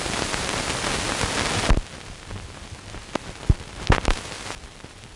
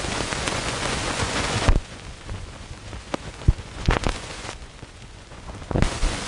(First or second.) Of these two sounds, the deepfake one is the second